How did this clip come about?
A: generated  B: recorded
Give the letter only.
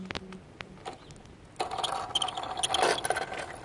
B